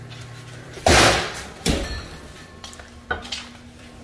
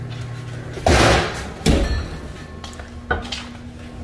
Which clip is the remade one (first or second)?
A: first